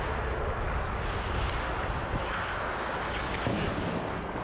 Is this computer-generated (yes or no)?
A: no